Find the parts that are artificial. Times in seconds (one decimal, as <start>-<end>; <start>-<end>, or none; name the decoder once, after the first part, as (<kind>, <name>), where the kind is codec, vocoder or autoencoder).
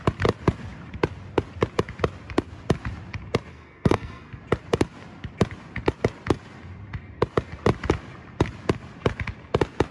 3.5-4.4 (codec, SNAC)